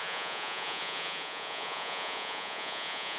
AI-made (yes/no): yes